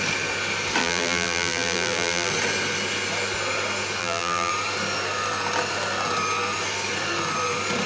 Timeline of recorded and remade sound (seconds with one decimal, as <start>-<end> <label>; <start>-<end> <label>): 0.0-0.8 recorded; 0.8-2.3 remade; 2.3-4.0 recorded; 4.0-4.5 remade; 4.5-7.9 recorded